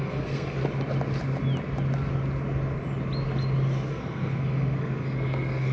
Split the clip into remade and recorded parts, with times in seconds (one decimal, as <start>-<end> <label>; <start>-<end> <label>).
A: 0.0-0.6 remade; 0.6-3.9 recorded; 3.9-5.7 remade